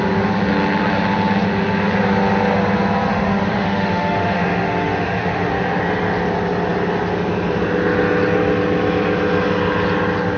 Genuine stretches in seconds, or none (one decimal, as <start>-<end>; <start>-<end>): 0.0-3.1; 5.8-10.4